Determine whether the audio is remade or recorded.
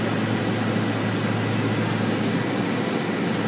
recorded